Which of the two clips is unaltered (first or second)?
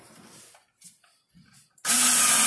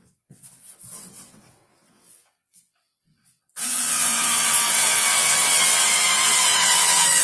first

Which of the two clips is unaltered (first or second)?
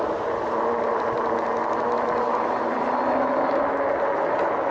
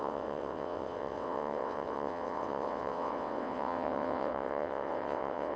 first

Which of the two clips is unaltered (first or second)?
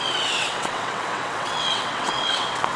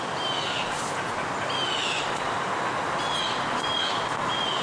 second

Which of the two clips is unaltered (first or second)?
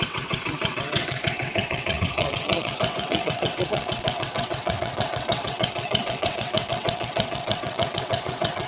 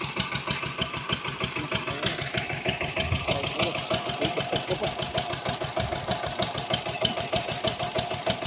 second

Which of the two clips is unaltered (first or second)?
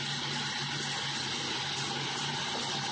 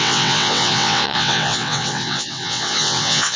first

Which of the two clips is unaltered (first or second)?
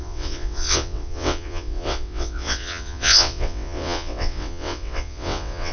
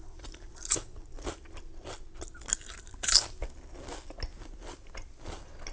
second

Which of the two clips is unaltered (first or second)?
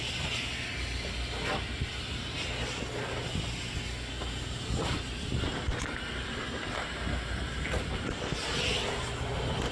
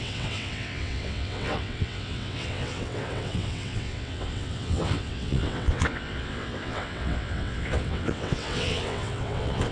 first